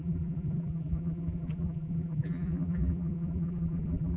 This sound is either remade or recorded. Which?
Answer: remade